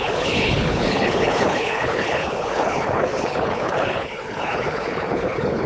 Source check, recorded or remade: remade